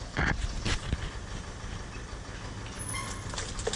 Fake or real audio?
real